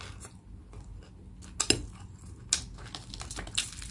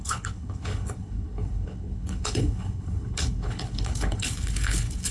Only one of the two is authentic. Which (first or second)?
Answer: first